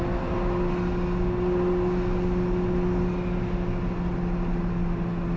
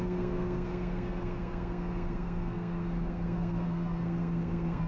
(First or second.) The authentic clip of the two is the first